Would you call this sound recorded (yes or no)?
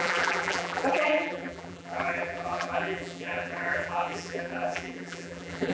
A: no